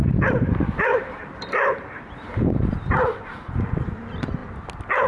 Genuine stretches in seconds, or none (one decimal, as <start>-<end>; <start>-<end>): 0.0-0.9; 4.0-5.1